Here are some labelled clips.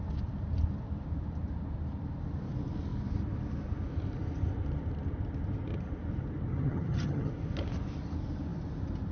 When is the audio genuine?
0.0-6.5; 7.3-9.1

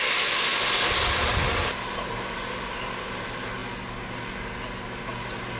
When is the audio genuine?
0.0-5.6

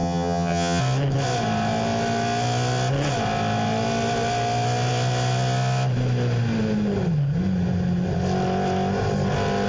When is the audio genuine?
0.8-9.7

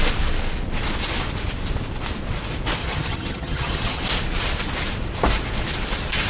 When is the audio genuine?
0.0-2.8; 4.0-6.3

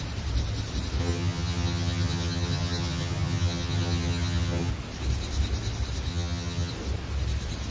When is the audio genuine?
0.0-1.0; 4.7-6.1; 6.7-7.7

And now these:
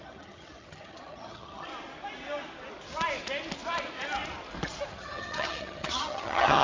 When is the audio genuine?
1.7-4.9

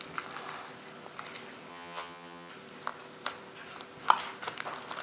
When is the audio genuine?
0.0-1.7; 2.5-5.0